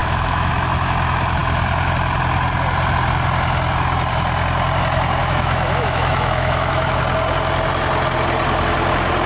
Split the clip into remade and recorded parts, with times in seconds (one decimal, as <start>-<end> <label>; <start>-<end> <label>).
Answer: 0.0-0.5 remade; 0.5-5.2 recorded; 5.2-7.0 remade; 7.0-9.3 recorded